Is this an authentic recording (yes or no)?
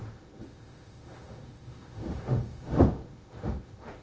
no